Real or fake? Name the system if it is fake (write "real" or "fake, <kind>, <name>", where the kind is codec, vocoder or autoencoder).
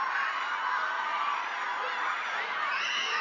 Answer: real